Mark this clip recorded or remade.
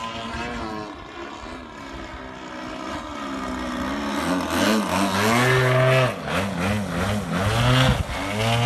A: recorded